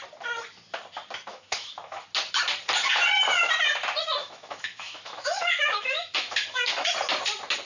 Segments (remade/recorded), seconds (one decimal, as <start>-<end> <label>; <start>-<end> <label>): 0.0-1.3 recorded; 1.3-2.0 remade; 2.0-4.2 recorded; 4.2-6.9 remade; 6.9-7.7 recorded